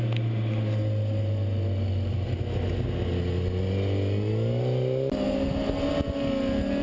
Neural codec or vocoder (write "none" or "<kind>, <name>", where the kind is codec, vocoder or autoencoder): none